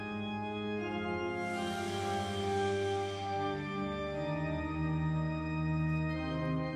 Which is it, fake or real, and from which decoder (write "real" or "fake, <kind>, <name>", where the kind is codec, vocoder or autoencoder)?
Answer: real